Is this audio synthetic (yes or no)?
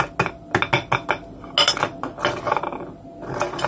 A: no